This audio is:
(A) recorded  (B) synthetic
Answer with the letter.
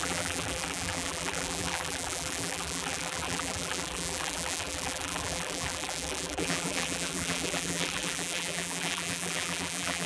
B